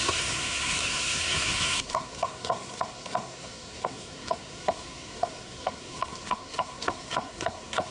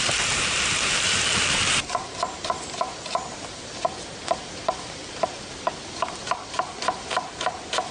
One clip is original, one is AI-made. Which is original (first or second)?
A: second